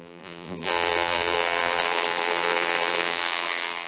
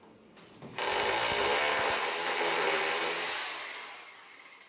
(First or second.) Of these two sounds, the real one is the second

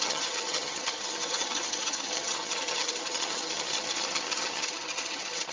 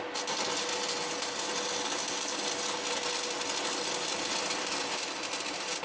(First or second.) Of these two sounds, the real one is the second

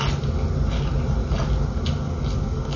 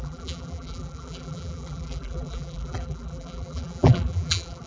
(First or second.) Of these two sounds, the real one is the first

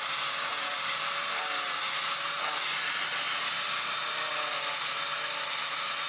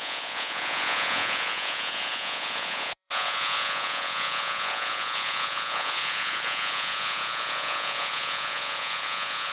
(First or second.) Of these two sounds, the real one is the first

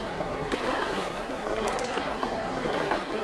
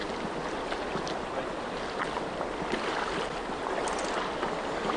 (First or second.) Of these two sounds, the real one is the second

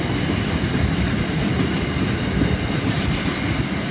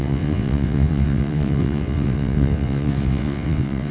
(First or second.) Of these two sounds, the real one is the first